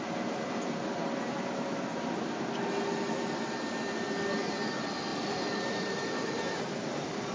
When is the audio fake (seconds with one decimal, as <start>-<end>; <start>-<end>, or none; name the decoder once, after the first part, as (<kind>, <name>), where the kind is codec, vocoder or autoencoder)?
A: 5.1-6.1 (vocoder, BigVGAN v2)